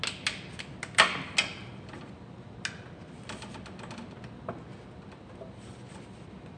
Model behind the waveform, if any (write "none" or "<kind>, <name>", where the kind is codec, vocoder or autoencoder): none